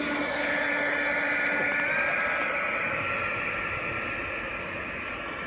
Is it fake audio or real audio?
real